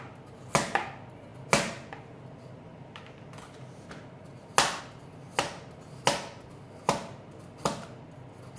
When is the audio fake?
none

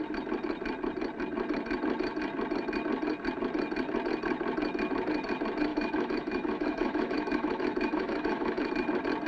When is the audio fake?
5.7-8.7 (autoencoder, DAC-VAE)

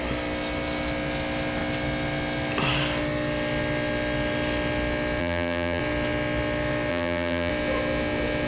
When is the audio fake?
5.2-5.8 (vocoder, BigVGAN v2); 6.9-7.5

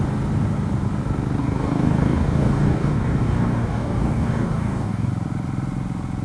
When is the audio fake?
1.4-5.1 (codec, DAC)

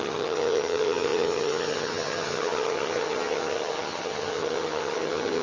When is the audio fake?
0.0-5.4 (vocoder, HiFi-GAN)

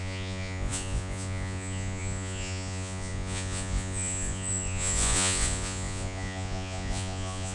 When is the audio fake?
0.0-7.5 (vocoder, Vocos)